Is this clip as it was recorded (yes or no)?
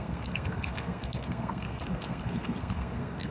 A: no